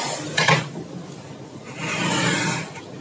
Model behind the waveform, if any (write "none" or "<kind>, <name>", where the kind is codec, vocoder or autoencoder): none